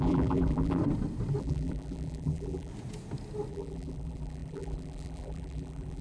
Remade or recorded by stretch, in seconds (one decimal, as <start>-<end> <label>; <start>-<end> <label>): 0.0-0.8 remade; 0.8-1.4 recorded; 1.4-2.7 remade; 2.7-3.5 recorded; 3.5-6.0 remade